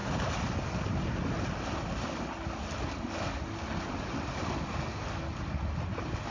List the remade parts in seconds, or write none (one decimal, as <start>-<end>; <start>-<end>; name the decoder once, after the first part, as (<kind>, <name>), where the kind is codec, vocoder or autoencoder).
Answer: none